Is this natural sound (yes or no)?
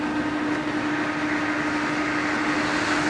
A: yes